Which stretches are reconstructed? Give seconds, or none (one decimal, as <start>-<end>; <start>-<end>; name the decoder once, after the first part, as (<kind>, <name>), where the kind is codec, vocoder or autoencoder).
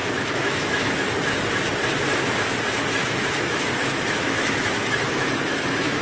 0.0-0.9 (autoencoder, DAC-VAE); 3.0-6.0